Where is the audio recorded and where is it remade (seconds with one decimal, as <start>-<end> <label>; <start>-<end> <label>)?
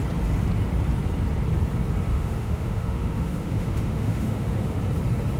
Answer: 0.0-2.1 recorded; 2.1-4.8 remade; 4.8-5.4 recorded